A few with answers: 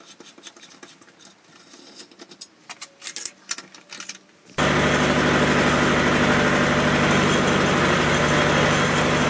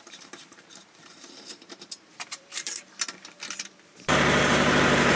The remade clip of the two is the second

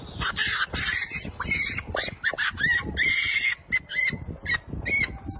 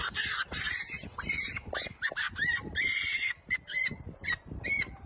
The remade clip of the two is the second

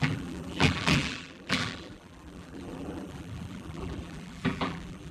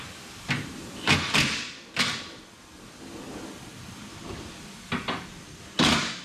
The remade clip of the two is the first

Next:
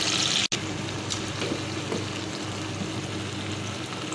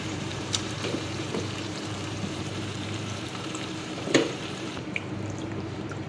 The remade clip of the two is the second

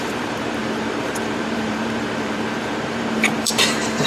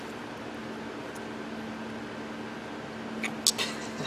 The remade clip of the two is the first